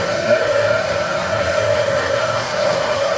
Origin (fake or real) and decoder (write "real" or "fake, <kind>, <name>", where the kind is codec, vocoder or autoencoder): fake, codec, SNAC